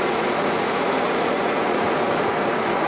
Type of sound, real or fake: fake